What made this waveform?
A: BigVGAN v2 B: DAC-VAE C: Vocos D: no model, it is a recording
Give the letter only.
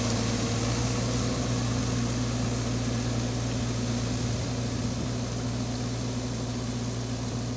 D